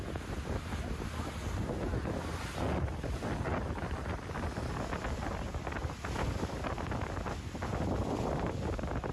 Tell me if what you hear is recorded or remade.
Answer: recorded